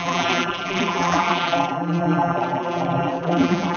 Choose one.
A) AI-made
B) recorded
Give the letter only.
A